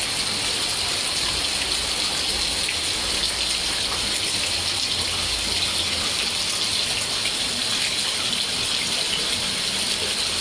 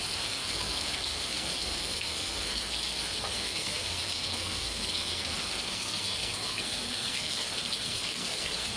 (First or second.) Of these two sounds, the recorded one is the first